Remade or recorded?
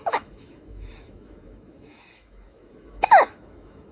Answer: remade